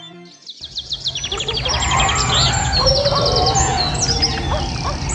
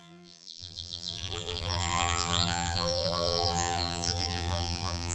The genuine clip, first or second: first